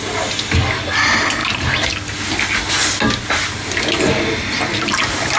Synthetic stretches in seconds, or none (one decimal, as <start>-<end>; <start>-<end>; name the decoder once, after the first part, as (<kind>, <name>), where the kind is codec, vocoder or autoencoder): none